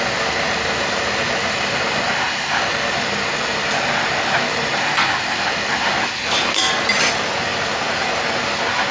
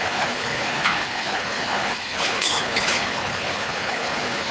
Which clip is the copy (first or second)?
second